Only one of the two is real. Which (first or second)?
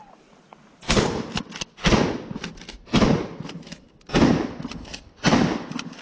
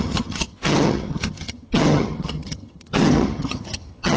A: first